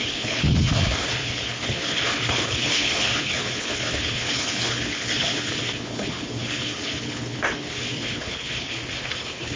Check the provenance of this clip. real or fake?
fake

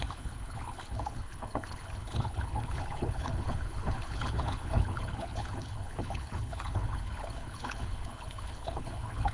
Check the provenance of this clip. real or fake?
fake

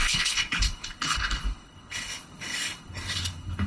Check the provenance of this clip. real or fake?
fake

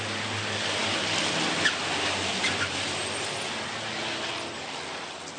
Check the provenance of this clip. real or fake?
real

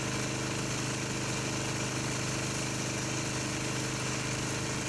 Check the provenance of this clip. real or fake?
real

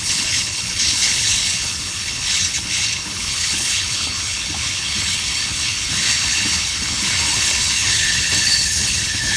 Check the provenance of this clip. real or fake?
fake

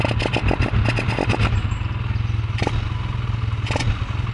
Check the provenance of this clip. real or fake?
real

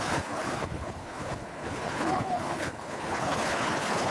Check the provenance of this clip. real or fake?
fake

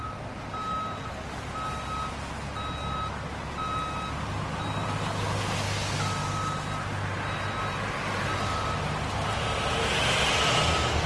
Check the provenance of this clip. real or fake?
real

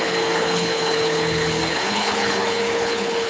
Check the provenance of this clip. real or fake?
fake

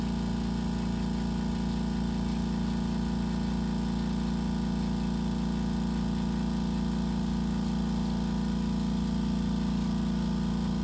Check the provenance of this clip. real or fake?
real